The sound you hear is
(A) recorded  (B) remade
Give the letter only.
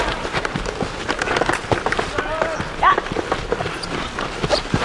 B